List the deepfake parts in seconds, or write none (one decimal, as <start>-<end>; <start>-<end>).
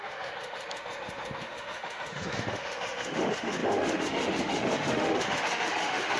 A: 0.0-6.2